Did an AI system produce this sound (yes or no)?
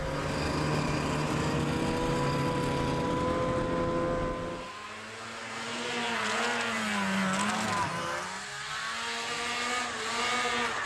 no